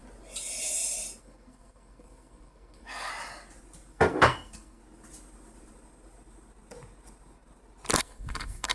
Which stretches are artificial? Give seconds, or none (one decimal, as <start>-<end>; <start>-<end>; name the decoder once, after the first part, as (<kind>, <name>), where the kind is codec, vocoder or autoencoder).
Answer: 1.2-3.1 (codec, SNAC); 3.9-4.8; 8.0-8.7